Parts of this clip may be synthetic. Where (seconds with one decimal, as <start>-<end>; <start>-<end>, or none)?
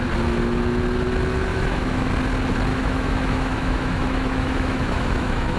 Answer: 1.5-2.1; 2.7-5.6